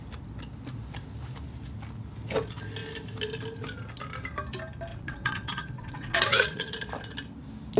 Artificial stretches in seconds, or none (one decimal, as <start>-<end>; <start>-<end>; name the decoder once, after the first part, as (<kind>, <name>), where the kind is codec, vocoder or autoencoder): 4.9-6.7 (vocoder, WaveNeXt)